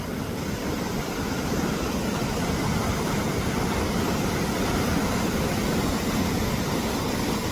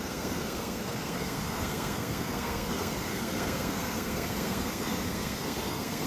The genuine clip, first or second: first